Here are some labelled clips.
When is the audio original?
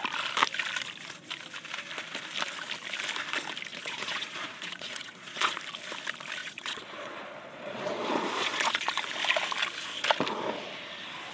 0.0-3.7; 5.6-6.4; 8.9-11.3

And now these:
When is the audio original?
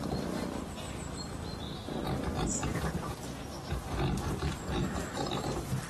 0.0-5.9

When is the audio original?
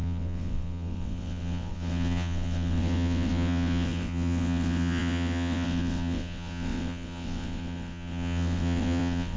none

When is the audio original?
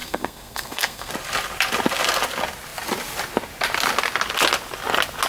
1.1-5.3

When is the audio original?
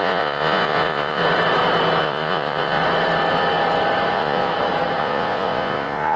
1.2-2.0; 2.8-4.1; 4.5-5.0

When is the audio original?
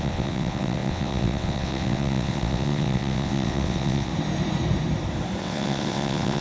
4.1-5.4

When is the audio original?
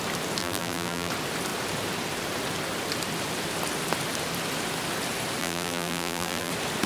0.0-0.4; 1.1-5.4; 6.5-6.9